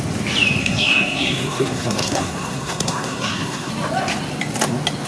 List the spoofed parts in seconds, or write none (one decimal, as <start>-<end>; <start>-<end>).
0.6-3.7